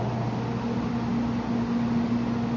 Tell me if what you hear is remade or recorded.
recorded